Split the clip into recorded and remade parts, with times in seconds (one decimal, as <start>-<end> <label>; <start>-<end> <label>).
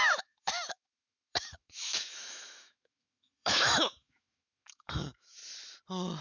0.0-5.4 remade; 5.4-6.2 recorded